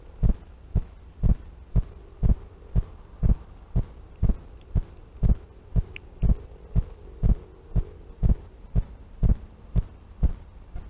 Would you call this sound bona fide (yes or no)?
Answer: yes